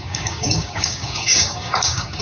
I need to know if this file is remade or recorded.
remade